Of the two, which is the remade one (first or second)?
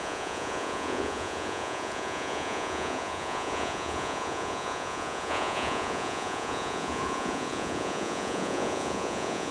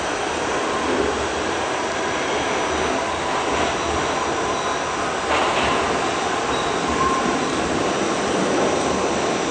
first